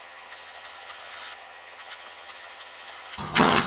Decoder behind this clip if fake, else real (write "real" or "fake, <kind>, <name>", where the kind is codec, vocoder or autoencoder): fake, vocoder, HiFi-GAN